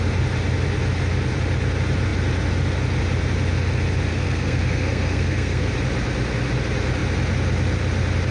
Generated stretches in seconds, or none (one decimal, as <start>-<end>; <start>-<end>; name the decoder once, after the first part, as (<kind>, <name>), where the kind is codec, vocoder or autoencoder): 4.1-5.7 (codec, SNAC)